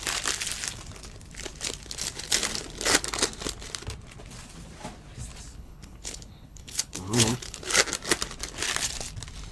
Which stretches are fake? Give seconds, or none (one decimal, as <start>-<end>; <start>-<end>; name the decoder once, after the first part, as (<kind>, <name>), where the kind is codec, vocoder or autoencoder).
5.5-7.6 (codec, HILCodec)